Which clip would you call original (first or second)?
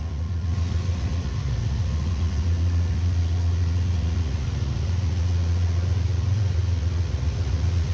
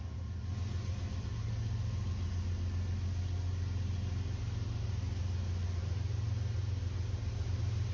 second